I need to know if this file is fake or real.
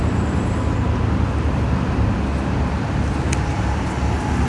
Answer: real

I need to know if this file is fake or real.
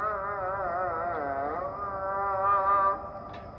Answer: real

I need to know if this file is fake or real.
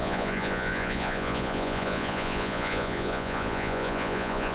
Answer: fake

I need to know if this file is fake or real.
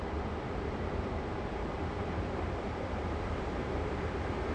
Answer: fake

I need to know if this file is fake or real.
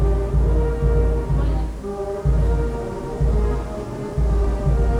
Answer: real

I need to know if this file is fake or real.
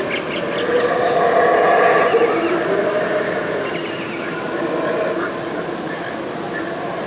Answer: fake